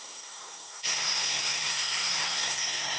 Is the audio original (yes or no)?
no